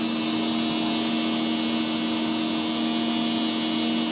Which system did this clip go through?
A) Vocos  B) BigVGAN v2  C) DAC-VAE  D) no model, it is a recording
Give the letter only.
D